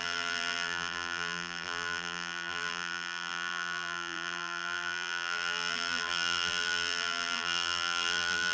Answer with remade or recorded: remade